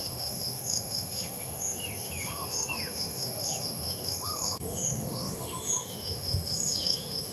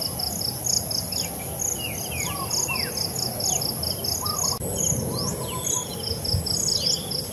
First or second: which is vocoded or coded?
first